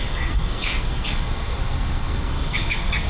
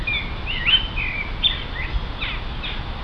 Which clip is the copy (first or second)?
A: first